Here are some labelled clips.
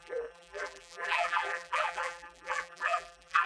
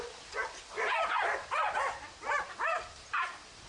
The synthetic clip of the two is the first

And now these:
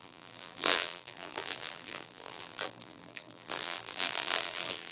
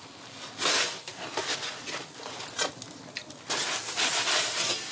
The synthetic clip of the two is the first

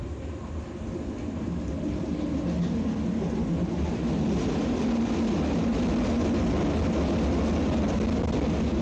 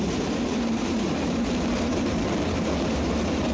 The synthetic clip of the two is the second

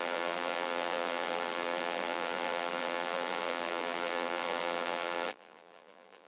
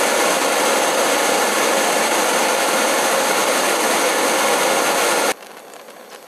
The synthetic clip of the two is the first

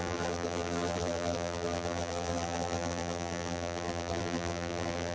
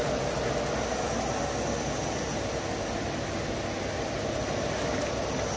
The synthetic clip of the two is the first